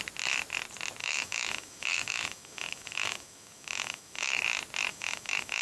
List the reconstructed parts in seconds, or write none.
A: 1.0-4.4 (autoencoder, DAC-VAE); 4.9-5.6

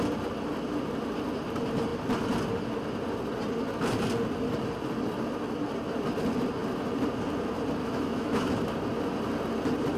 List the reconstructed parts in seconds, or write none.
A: 7.8-8.5 (autoencoder, DAC-VAE)

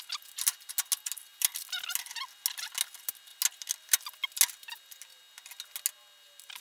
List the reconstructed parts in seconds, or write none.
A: none

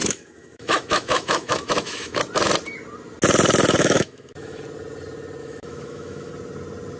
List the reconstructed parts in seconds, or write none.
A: 0.0-2.2 (autoencoder, DAC-VAE); 3.8-4.6; 5.4-6.3